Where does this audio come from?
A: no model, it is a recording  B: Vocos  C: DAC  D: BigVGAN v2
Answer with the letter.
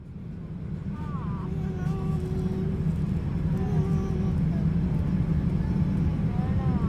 A